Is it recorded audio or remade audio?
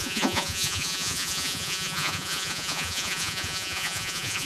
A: remade